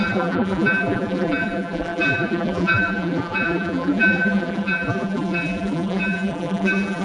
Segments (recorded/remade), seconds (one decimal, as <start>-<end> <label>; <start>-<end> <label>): 0.0-7.0 remade